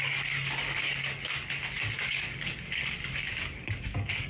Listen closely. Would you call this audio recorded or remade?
remade